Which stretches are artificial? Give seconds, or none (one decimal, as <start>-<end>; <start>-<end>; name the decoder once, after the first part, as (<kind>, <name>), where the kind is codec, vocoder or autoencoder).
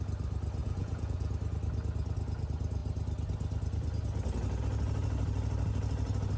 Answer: 0.6-1.3 (vocoder, Vocos)